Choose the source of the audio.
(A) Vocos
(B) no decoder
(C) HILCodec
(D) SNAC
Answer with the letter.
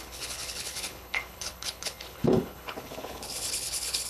C